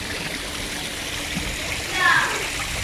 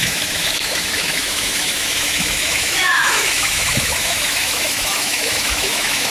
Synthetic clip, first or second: second